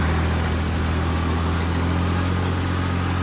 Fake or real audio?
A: real